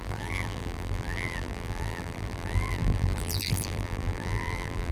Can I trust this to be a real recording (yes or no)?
no